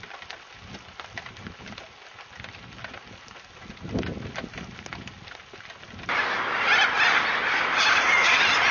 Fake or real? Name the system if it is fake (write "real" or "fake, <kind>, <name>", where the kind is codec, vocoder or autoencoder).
real